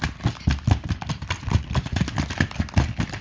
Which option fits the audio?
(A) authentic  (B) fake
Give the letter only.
A